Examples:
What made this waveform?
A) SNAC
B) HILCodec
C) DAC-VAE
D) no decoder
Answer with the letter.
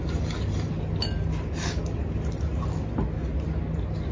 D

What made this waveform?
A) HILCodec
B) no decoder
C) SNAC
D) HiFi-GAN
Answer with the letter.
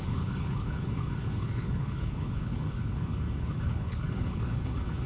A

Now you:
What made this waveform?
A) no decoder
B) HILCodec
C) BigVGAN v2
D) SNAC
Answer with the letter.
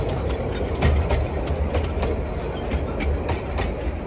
A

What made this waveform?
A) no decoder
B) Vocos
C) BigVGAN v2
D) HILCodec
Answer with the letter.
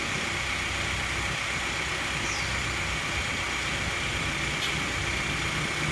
A